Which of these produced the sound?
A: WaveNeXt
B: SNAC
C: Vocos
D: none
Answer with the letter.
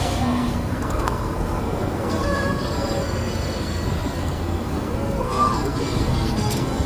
B